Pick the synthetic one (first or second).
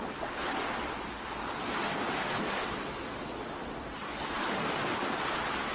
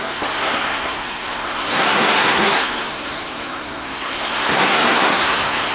second